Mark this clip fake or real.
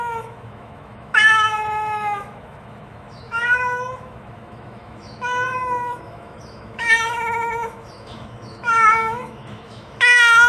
fake